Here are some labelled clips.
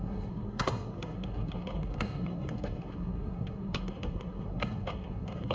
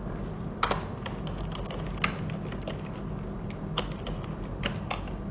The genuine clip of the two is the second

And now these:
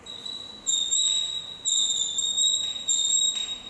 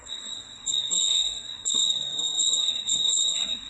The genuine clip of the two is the first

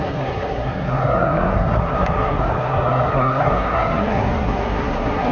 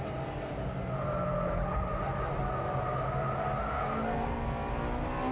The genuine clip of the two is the second